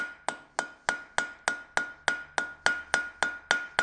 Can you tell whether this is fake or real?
real